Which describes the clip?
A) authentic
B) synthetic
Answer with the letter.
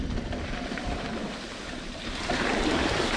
B